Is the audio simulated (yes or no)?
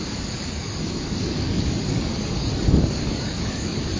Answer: yes